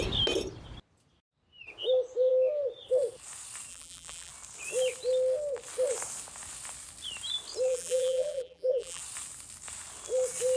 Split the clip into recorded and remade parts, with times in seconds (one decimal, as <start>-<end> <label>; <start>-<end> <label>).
0.0-3.7 recorded; 3.7-4.3 remade; 4.3-7.7 recorded; 7.7-9.0 remade; 9.0-10.6 recorded